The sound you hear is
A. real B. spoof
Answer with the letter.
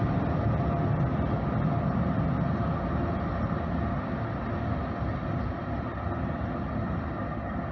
A